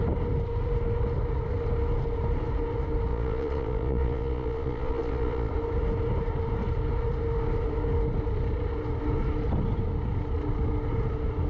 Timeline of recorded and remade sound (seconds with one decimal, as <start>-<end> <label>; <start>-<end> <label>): 0.0-3.1 recorded; 3.1-5.5 remade; 5.5-11.5 recorded